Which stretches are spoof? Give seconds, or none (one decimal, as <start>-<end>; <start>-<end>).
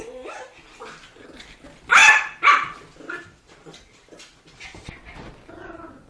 none